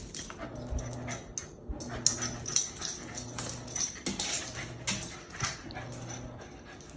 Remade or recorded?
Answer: recorded